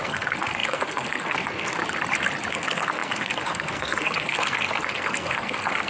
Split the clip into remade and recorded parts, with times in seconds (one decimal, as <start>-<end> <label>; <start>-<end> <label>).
0.0-1.8 remade; 1.8-2.5 recorded; 2.5-5.9 remade